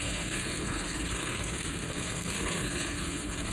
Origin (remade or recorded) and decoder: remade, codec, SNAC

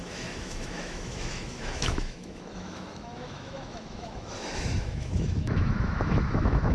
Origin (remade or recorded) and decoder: remade, autoencoder, DAC-VAE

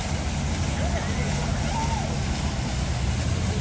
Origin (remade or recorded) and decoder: recorded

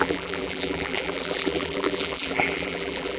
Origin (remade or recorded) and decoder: remade, vocoder, BigVGAN v2